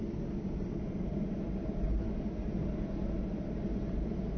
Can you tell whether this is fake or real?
real